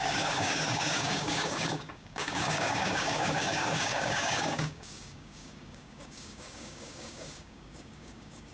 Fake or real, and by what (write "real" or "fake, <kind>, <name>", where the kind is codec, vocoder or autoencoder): fake, codec, DAC